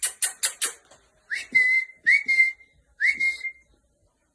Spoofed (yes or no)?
no